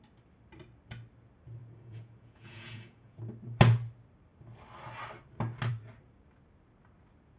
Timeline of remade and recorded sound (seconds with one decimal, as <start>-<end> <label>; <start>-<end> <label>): 0.0-1.6 recorded; 1.6-3.2 remade; 3.2-7.4 recorded